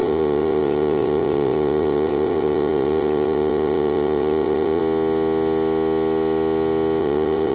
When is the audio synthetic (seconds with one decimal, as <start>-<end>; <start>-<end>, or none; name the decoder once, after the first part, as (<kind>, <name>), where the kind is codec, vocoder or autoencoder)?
0.0-4.8 (vocoder, WaveNeXt); 7.0-7.5